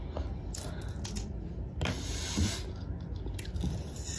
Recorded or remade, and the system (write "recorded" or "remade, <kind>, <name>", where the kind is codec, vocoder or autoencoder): recorded